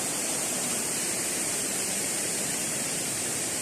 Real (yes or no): no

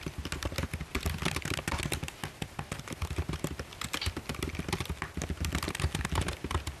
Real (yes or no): yes